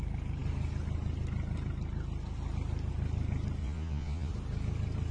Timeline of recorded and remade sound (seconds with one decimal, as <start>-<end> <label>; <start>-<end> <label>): 0.0-3.6 recorded; 3.6-4.3 remade; 4.3-5.1 recorded